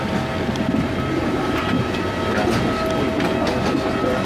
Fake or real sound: real